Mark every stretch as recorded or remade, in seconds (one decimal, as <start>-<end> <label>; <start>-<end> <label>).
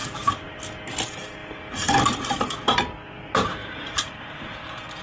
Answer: 0.0-0.6 remade; 0.6-3.6 recorded; 3.6-4.5 remade; 4.5-5.0 recorded